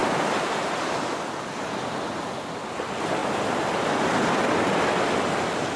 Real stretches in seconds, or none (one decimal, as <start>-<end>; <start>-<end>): 0.0-5.8